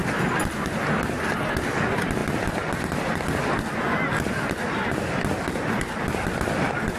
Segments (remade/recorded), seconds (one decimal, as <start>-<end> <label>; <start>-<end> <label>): 0.0-7.0 recorded